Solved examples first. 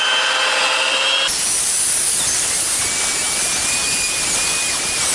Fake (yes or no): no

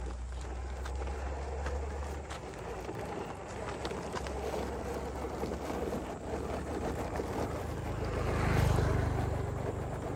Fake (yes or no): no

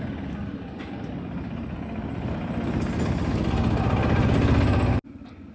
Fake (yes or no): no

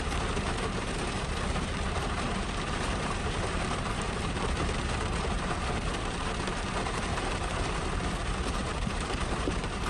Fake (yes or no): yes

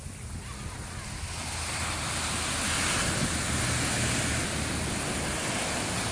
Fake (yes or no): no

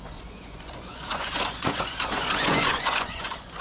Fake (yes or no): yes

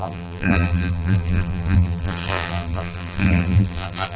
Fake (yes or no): yes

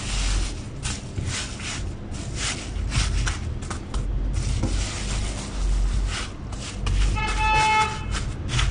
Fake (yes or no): no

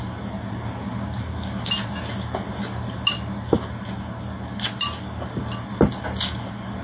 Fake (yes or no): no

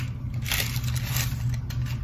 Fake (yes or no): no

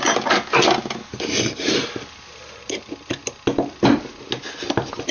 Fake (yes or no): no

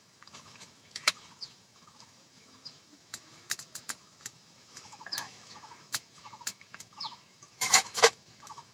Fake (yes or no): yes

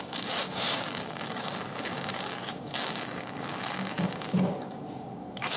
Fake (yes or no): yes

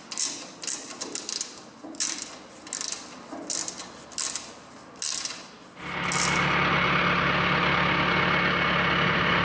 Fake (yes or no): no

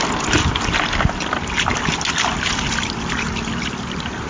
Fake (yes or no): no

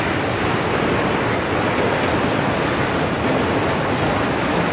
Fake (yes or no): no